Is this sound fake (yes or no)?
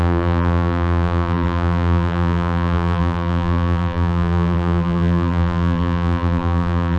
yes